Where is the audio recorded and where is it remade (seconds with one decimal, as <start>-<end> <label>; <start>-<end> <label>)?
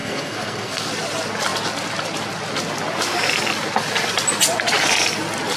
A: 0.0-0.9 remade; 0.9-5.6 recorded